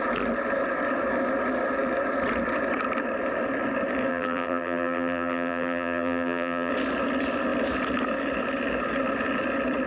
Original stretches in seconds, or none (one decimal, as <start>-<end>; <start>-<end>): 0.0-4.1; 6.7-9.9